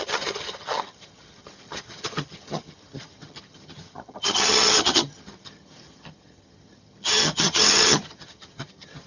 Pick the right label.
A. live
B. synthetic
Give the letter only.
B